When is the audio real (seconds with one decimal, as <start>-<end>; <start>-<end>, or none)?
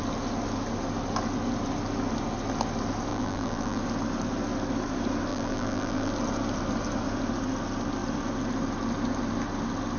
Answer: 0.0-3.1; 3.8-5.3; 6.1-10.0